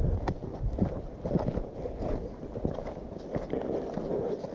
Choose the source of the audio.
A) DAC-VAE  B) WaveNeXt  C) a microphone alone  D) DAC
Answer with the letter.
C